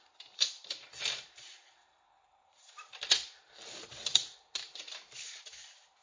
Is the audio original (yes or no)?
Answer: yes